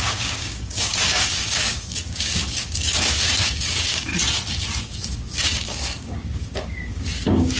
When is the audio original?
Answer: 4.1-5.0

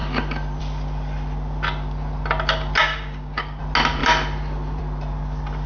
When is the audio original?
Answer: 0.0-2.8; 3.6-5.7

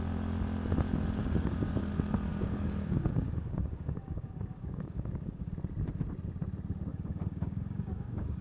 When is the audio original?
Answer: 0.0-1.2; 1.9-2.3; 5.5-6.9

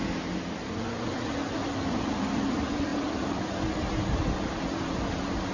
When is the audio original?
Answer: 0.0-5.5

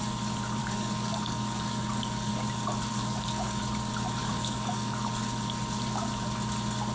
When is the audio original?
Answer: 0.0-0.6; 2.3-2.9; 3.6-4.2; 5.2-6.9

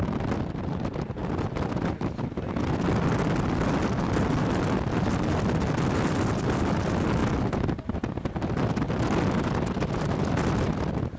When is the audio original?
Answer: 0.0-11.2

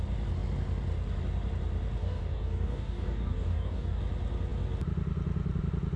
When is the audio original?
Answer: 0.0-2.0; 4.0-6.0